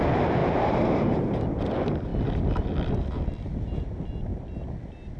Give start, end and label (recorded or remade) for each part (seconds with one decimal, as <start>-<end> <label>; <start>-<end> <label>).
0.0-0.4 recorded; 0.4-1.4 remade; 1.4-5.2 recorded

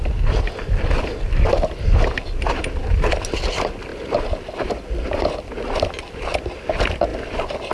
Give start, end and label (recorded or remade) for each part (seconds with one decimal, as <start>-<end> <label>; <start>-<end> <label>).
0.0-7.7 recorded